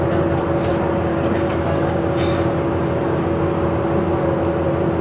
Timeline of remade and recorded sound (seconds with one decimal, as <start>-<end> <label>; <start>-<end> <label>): 0.0-1.1 recorded; 1.1-3.6 remade; 3.6-5.0 recorded